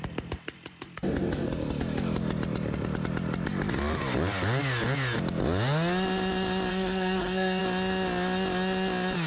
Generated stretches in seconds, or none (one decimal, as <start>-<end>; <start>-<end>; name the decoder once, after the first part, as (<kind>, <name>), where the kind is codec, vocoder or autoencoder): 6.7-7.6 (codec, SNAC)